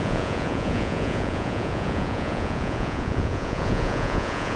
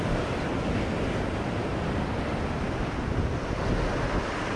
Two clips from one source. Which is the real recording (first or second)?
second